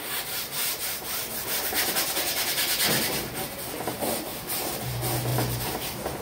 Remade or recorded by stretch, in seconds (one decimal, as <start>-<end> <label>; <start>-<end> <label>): 0.0-4.3 recorded; 4.3-4.8 remade; 4.8-5.3 recorded; 5.3-6.2 remade